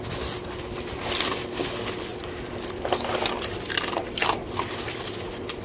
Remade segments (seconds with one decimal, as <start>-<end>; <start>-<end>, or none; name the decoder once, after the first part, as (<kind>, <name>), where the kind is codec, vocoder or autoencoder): 2.1-5.6 (vocoder, BigVGAN v2)